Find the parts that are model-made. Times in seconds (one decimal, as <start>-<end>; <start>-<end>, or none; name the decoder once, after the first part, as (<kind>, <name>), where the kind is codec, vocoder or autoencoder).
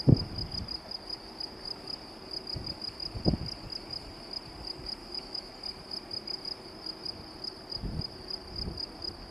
5.0-5.5 (autoencoder, DAC-VAE)